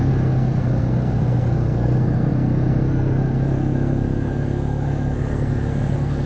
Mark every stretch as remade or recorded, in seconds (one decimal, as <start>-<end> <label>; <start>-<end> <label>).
0.0-6.3 remade

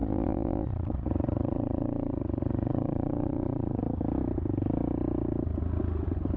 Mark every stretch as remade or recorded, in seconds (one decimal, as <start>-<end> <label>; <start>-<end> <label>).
0.0-3.8 remade; 3.8-6.4 recorded